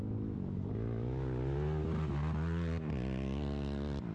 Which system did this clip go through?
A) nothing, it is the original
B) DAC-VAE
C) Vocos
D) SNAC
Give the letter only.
A